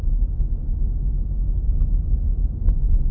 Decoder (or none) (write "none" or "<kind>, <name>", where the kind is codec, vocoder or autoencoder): none